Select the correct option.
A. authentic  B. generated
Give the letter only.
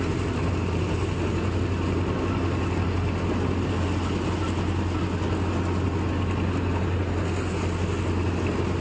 A